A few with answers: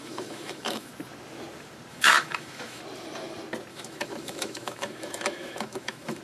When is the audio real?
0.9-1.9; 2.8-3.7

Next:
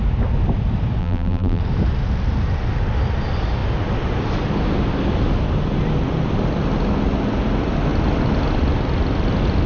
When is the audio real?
0.0-1.0; 1.6-9.7